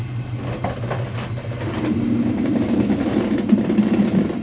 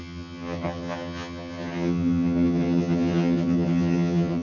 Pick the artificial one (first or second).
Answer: second